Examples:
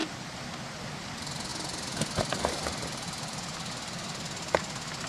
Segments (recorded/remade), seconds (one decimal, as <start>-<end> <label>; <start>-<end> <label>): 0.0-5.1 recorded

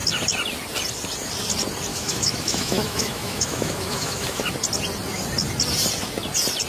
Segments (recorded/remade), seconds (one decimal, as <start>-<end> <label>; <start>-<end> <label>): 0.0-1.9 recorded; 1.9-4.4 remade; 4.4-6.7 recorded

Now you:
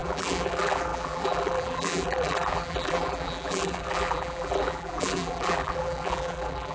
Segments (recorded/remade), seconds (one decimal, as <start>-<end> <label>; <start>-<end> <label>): 0.0-6.7 remade